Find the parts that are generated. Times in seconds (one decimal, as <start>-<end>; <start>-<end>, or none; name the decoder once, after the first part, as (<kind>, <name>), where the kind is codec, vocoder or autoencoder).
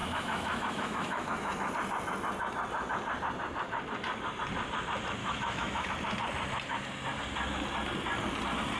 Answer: 0.0-1.7 (autoencoder, DAC-VAE); 5.2-5.9